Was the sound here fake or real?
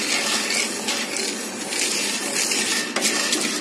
real